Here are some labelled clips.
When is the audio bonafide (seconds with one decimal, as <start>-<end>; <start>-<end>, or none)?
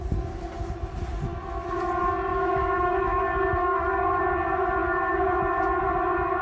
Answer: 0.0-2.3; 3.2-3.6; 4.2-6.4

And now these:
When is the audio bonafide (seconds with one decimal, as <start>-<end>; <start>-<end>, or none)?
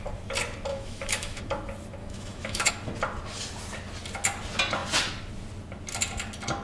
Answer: 0.0-0.7; 1.4-2.0; 2.7-6.6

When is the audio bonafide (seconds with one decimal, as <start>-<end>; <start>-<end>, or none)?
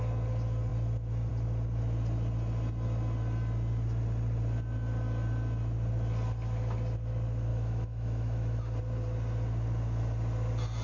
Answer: 0.0-7.5; 8.6-10.8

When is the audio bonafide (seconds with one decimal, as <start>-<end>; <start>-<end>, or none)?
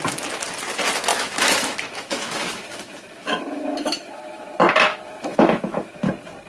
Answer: 0.0-1.1; 4.5-4.9; 6.0-6.5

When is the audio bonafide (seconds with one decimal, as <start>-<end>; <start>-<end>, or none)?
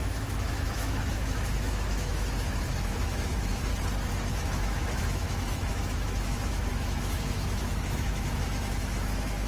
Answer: 3.7-4.3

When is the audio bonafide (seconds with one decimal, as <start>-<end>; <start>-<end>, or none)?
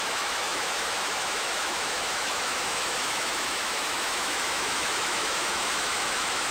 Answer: none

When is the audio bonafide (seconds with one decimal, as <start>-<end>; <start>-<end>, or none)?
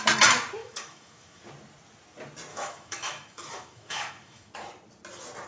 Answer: 0.0-0.6; 1.4-2.5; 4.5-5.5